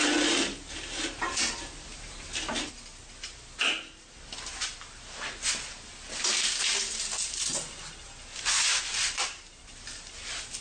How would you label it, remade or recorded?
recorded